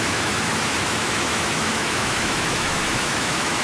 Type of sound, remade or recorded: remade